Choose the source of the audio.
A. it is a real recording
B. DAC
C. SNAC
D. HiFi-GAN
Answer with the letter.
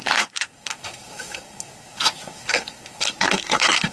C